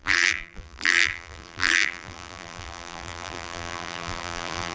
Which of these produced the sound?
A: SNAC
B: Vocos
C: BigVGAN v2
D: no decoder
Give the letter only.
C